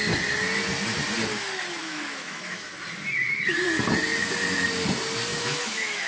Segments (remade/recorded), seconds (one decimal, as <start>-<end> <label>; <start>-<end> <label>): 0.0-1.8 recorded; 1.8-2.7 remade; 2.7-5.3 recorded; 5.3-6.1 remade